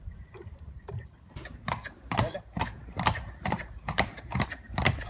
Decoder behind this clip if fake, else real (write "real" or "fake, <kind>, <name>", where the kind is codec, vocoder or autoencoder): fake, vocoder, BigVGAN v2